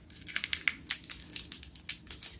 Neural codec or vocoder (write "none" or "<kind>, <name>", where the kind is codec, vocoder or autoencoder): none